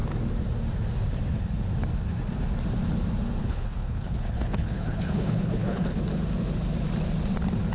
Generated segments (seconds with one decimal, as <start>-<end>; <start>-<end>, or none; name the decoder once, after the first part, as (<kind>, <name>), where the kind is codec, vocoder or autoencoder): 3.4-6.0 (codec, HILCodec)